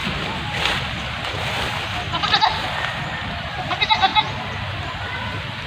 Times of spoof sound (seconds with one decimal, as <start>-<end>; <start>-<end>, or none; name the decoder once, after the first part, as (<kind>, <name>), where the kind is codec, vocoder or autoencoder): none